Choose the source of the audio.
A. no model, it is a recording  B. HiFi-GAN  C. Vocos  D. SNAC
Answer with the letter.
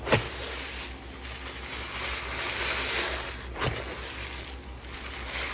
A